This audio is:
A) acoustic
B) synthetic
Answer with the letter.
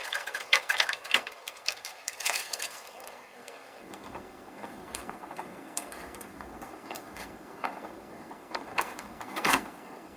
B